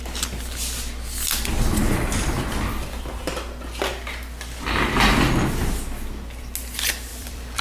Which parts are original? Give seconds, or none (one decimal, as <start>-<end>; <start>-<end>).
0.0-7.1